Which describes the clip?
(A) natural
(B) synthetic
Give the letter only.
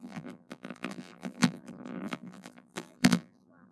B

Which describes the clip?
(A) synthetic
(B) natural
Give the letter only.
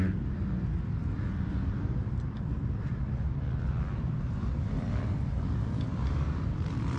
A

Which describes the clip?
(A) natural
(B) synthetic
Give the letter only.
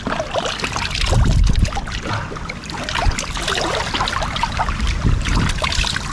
A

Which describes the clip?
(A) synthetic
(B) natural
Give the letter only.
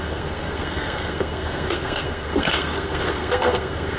A